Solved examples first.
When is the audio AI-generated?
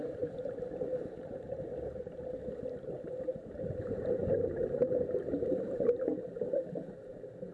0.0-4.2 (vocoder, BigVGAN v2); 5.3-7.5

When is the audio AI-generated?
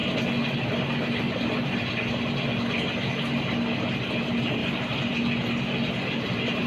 4.6-5.1 (vocoder, BigVGAN v2)